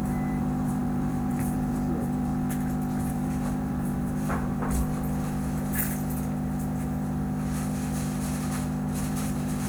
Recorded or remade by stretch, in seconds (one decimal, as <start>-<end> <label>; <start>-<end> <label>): 0.0-2.3 remade; 2.3-3.1 recorded; 3.1-4.6 remade; 4.6-9.0 recorded; 9.0-9.7 remade